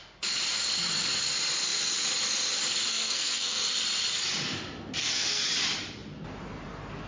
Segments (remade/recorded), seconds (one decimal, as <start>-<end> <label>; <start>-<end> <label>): 0.0-2.9 recorded; 2.9-3.7 remade; 3.7-5.0 recorded; 5.0-5.5 remade; 5.5-7.1 recorded